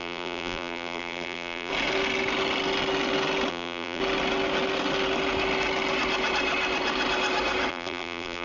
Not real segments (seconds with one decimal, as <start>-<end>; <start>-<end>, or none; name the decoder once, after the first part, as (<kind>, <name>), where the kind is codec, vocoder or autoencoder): 0.0-1.7 (vocoder, BigVGAN v2); 3.5-4.0; 7.7-8.4